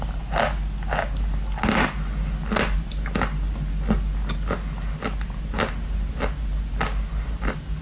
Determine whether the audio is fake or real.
real